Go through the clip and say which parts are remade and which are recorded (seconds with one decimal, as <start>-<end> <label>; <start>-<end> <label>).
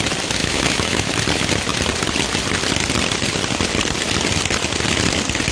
0.0-0.4 recorded; 0.4-1.1 remade; 1.1-5.5 recorded